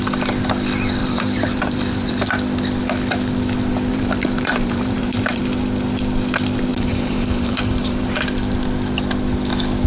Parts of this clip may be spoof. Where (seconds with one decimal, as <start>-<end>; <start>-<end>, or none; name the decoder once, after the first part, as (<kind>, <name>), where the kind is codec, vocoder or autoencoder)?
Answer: 1.0-2.2 (vocoder, BigVGAN v2); 3.9-5.4; 6.7-8.1

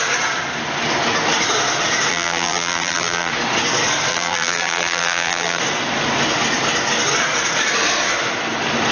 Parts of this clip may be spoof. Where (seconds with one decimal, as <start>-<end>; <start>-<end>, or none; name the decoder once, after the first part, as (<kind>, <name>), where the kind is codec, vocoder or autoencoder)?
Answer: 2.1-3.3 (vocoder, BigVGAN v2); 4.1-5.6

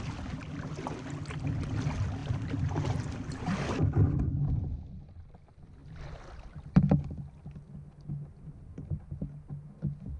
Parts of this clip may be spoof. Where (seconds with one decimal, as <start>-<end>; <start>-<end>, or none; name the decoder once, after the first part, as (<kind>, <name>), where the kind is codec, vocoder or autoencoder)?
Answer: none

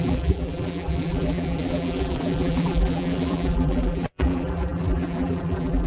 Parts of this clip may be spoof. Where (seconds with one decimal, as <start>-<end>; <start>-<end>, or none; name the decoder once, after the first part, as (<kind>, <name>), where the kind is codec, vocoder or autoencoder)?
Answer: 0.0-5.9 (vocoder, BigVGAN v2)

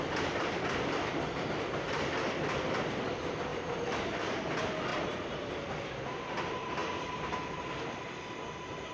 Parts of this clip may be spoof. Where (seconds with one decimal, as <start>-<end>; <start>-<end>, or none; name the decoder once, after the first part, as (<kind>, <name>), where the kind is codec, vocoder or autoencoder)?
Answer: 3.5-4.0 (vocoder, BigVGAN v2); 4.9-5.5

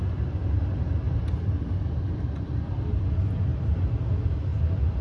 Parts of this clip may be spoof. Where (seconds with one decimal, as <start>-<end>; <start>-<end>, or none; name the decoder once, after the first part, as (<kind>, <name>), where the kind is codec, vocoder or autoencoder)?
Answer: 4.5-5.0 (vocoder, BigVGAN v2)

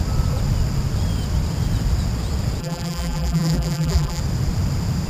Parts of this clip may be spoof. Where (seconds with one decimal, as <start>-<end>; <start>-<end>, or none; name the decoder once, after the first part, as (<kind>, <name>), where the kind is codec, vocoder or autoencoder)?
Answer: 2.6-4.2 (vocoder, BigVGAN v2)

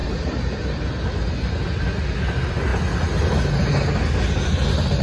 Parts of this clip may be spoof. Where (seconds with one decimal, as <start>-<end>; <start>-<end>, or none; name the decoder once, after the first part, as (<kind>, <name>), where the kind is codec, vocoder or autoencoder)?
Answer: none